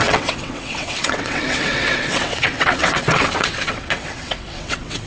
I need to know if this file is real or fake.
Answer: fake